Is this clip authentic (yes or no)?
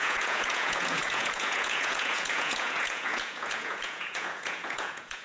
no